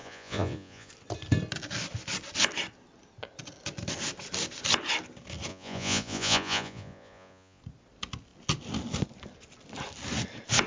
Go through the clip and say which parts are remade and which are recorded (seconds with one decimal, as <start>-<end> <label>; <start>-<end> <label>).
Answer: 0.0-0.9 remade; 0.9-5.5 recorded; 5.5-7.6 remade; 7.6-10.7 recorded